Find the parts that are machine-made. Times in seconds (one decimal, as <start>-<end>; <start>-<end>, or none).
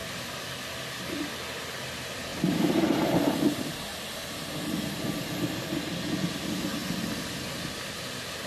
0.0-6.8; 7.3-8.5